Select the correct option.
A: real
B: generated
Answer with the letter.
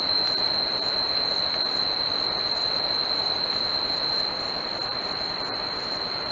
A